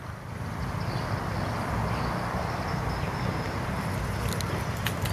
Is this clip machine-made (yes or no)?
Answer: no